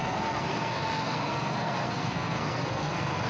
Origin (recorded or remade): remade